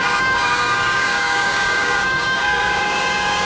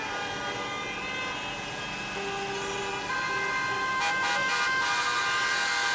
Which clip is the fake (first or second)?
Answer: first